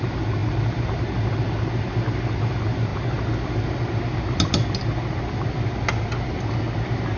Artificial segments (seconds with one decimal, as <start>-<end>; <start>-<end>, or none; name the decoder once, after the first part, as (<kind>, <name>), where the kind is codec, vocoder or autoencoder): none